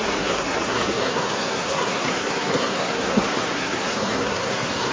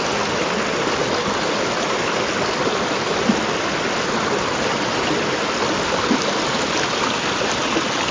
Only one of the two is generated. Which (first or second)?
first